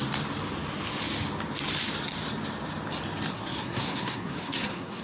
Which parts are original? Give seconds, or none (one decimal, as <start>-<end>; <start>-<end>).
0.0-3.3